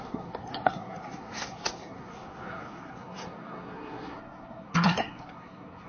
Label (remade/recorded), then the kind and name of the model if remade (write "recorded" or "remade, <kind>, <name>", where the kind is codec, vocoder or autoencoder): remade, codec, SNAC